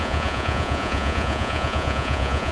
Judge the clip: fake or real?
fake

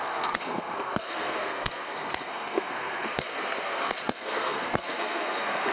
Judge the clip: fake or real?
fake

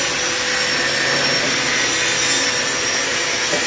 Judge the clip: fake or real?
real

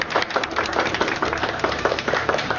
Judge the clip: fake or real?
fake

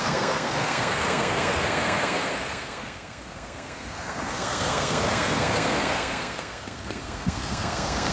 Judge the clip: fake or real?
fake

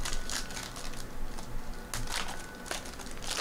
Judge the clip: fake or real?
real